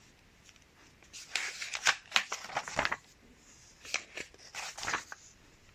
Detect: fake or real real